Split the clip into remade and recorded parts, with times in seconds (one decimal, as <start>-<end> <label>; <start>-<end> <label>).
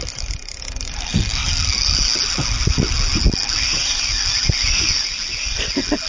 0.0-6.1 recorded